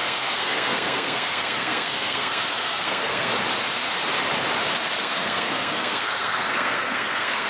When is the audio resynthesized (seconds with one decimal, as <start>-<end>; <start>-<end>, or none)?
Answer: 0.0-3.3; 5.0-7.5